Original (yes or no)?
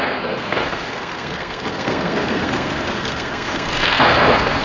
no